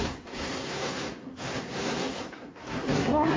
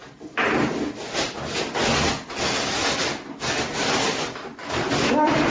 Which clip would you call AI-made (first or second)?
first